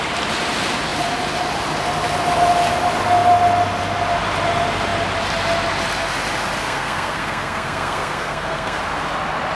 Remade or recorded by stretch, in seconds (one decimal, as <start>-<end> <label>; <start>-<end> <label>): 0.0-6.6 recorded; 6.6-8.8 remade; 8.8-9.5 recorded